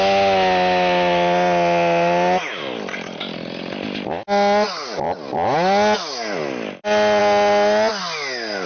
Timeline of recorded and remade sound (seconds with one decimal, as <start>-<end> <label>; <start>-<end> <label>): 0.0-8.7 recorded